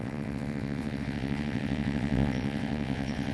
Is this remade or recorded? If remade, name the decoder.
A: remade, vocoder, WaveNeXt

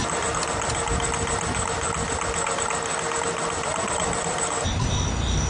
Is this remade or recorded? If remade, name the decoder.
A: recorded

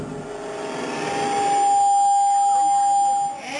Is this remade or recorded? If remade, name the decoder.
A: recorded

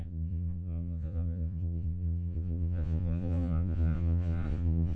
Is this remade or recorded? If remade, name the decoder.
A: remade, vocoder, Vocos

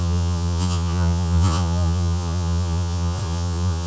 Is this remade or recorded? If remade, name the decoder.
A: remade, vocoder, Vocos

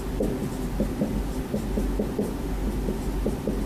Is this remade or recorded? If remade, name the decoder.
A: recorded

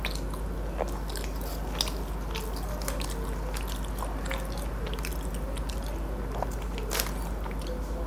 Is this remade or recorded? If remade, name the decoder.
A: recorded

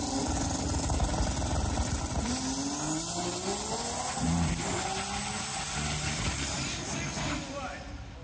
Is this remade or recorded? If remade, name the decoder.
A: recorded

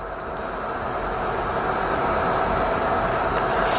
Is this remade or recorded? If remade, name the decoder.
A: recorded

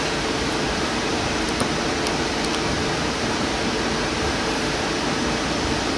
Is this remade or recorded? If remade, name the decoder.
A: remade, vocoder, BigVGAN v2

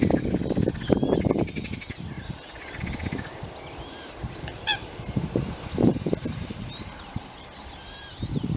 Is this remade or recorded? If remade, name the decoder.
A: remade, vocoder, BigVGAN v2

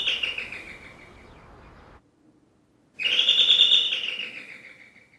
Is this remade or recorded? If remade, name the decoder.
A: recorded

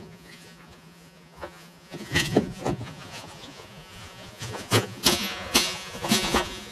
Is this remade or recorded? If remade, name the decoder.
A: remade, vocoder, Vocos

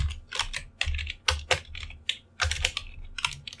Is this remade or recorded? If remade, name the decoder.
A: recorded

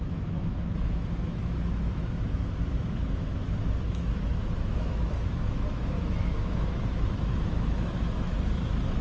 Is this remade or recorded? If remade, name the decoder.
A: remade, autoencoder, DAC-VAE